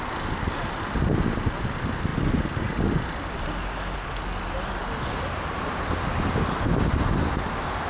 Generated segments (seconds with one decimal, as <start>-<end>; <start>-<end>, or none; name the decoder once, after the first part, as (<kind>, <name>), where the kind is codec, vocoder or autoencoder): none